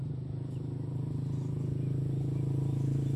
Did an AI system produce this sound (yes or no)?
no